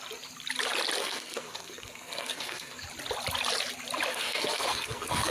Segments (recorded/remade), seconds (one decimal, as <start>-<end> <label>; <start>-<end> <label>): 0.0-1.0 recorded; 1.0-2.8 remade; 2.8-4.1 recorded; 4.1-5.3 remade